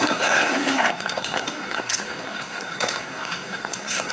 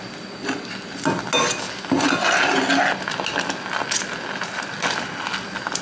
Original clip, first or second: second